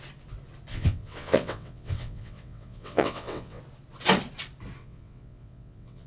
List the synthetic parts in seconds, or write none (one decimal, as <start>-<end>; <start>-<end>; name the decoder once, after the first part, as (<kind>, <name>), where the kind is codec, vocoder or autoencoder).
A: 0.7-3.6 (vocoder, WaveNeXt); 4.8-6.1